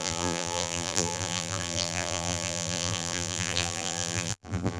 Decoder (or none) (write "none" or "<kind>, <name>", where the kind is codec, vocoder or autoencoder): vocoder, BigVGAN v2